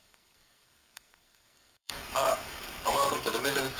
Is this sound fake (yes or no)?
yes